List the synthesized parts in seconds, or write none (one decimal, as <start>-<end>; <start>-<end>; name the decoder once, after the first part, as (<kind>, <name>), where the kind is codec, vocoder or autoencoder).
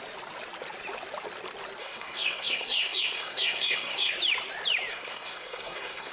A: 1.8-4.1 (codec, SNAC); 4.9-6.1